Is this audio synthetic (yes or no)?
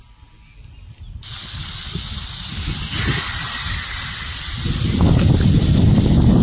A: no